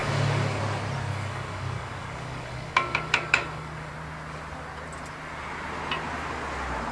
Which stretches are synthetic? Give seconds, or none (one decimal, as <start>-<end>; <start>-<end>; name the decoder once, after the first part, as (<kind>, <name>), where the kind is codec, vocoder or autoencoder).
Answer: 0.0-0.6 (codec, DAC); 1.1-3.9